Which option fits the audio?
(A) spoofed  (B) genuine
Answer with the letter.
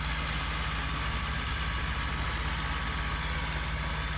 B